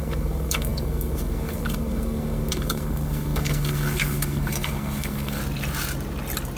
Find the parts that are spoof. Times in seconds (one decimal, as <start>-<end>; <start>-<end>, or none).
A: 0.0-5.4